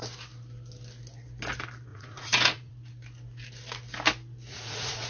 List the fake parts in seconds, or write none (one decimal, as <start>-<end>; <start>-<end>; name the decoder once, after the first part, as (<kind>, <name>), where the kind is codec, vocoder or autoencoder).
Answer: 1.9-2.7 (vocoder, Vocos); 4.5-5.1